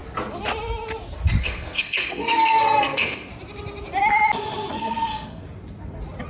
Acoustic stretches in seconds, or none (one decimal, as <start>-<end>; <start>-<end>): 0.0-1.4; 3.3-4.8; 5.4-6.3